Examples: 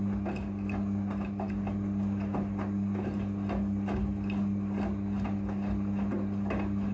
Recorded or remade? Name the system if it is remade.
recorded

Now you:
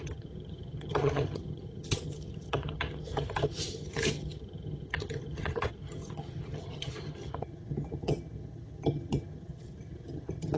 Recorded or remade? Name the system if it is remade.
remade, vocoder, HiFi-GAN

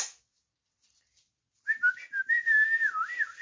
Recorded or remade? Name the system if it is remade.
recorded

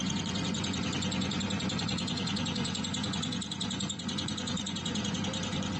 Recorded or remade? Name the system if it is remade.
remade, vocoder, Vocos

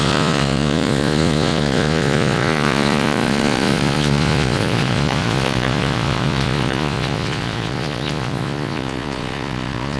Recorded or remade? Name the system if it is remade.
remade, vocoder, Vocos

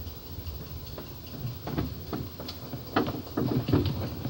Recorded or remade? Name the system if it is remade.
recorded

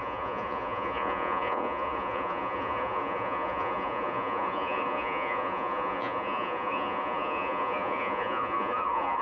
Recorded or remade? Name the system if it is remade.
remade, vocoder, Vocos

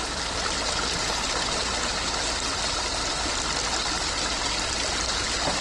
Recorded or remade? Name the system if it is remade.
recorded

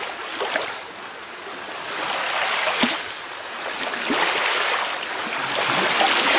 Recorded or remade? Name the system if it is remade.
recorded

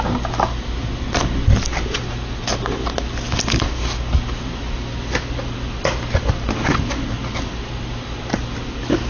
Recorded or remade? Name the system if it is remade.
recorded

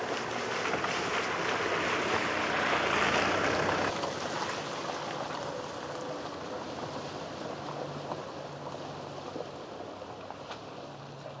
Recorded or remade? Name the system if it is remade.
recorded